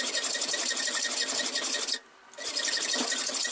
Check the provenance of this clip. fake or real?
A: real